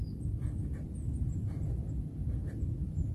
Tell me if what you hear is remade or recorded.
recorded